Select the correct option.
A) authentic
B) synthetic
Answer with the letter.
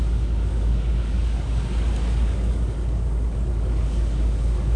B